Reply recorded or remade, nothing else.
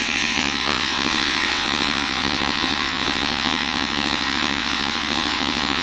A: remade